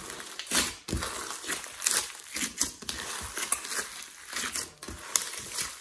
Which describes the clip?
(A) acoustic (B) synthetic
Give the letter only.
A